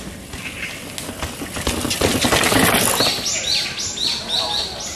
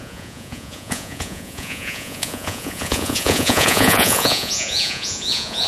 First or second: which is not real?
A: second